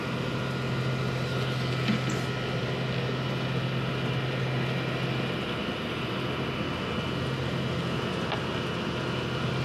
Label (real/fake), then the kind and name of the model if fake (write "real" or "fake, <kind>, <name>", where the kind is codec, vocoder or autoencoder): real